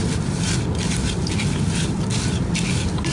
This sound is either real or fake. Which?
real